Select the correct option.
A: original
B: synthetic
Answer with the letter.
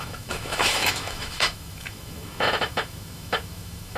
B